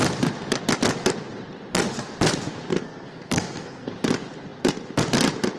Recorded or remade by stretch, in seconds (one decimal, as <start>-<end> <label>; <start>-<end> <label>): 0.0-2.7 recorded; 2.7-3.9 remade; 3.9-5.6 recorded